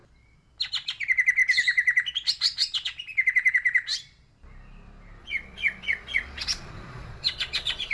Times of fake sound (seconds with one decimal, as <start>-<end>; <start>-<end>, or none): 5.2-7.9